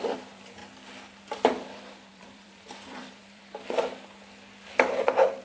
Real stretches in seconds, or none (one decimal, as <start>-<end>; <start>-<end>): 0.6-1.3; 3.4-4.9